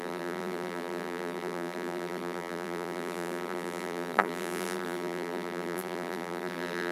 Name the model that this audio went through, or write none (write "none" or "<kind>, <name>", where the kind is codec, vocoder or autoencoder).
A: vocoder, BigVGAN v2